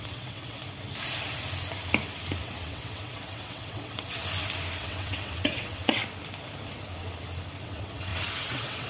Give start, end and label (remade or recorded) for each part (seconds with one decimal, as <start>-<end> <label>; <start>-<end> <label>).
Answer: 0.0-0.6 remade; 0.6-2.4 recorded; 2.4-4.2 remade; 4.2-4.8 recorded; 4.8-6.0 remade; 6.0-7.6 recorded; 7.6-8.9 remade

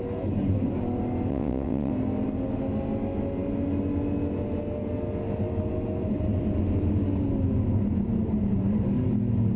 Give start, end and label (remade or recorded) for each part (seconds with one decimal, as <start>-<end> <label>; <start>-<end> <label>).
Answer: 0.0-1.3 recorded; 1.3-1.9 remade; 1.9-9.6 recorded

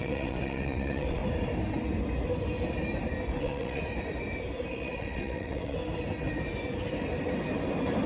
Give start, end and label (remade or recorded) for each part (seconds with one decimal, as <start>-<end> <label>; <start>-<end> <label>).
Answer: 0.0-1.2 remade; 1.2-3.4 recorded; 3.4-3.8 remade; 3.8-4.7 recorded; 4.7-5.8 remade; 5.8-8.1 recorded

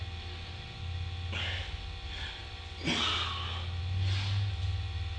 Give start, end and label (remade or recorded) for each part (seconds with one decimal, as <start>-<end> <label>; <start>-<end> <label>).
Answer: 0.0-5.2 recorded